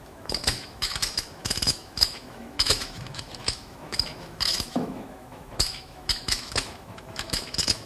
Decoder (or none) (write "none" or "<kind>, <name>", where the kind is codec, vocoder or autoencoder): autoencoder, DAC-VAE